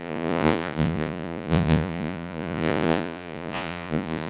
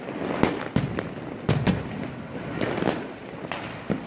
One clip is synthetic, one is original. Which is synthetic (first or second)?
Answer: first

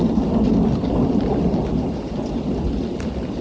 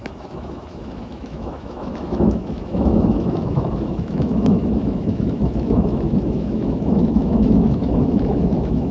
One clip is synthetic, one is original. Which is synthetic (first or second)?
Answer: second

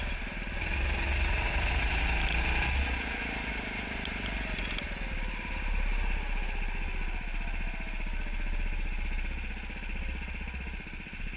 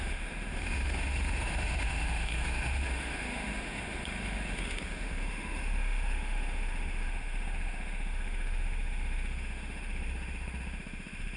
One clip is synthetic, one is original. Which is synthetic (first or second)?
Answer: second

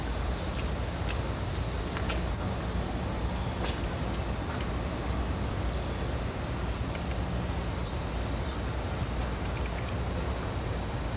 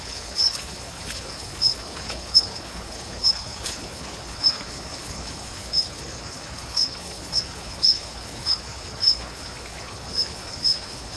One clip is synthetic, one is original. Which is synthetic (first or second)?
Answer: second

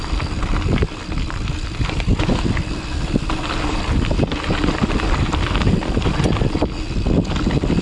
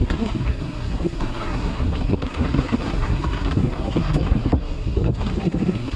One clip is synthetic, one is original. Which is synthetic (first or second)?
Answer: second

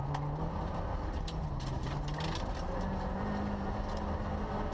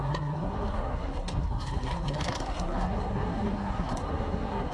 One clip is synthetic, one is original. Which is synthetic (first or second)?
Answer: second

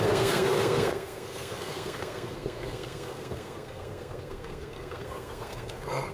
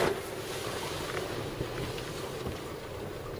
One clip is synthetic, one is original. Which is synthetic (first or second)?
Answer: first